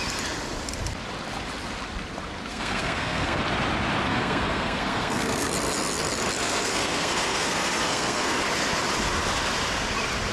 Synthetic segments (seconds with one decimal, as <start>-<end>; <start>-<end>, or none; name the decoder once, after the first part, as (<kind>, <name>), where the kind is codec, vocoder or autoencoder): 2.5-3.4 (codec, SNAC); 4.1-5.5; 6.4-8.4

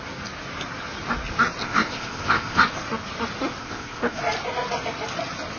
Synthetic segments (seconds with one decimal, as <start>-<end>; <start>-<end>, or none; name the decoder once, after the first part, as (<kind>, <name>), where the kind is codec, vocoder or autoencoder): 1.6-2.6 (codec, ZipCodec); 3.6-4.2

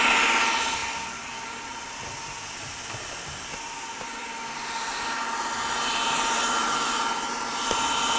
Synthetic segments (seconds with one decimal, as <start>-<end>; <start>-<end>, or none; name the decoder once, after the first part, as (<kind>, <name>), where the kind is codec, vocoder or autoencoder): 0.8-5.2 (vocoder, BigVGAN v2); 6.6-7.1

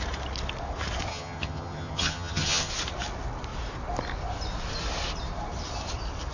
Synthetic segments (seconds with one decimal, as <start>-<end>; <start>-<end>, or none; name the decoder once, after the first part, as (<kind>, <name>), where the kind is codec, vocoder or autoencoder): 1.1-2.7 (vocoder, HiFi-GAN)

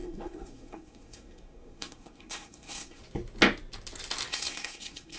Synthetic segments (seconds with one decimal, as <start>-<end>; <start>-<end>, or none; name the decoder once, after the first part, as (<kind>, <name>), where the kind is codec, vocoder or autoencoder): 0.0-3.0 (codec, SNAC); 4.3-5.2

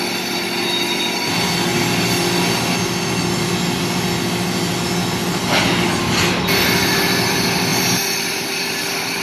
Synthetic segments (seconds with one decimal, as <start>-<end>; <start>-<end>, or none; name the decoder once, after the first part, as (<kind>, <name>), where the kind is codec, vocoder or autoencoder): none

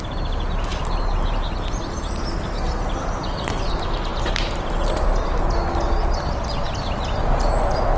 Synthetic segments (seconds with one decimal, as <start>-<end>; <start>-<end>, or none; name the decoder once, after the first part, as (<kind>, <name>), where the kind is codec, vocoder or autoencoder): none

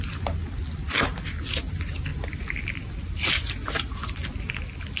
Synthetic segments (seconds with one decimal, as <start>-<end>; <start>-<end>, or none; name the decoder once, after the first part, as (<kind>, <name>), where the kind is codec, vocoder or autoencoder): none